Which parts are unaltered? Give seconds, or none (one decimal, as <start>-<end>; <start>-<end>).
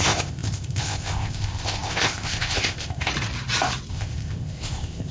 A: 3.1-3.9